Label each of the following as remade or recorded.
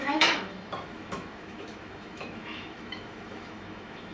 remade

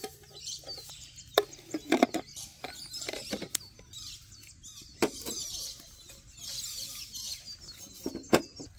recorded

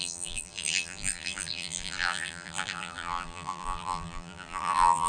remade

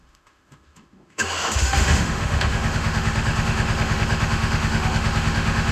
remade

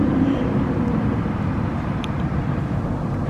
remade